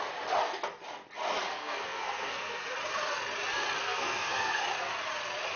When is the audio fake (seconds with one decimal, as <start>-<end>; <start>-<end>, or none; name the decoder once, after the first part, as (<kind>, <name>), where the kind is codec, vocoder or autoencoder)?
1.4-2.7 (codec, SNAC); 3.8-4.6